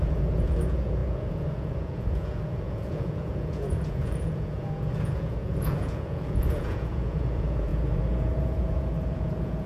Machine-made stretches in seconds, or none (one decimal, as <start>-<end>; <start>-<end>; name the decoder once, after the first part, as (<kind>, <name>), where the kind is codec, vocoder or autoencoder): 0.0-9.7 (vocoder, Vocos)